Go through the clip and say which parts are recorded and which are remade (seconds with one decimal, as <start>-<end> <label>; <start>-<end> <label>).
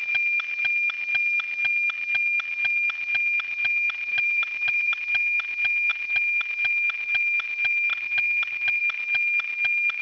0.0-4.1 recorded; 4.1-5.0 remade; 5.0-10.0 recorded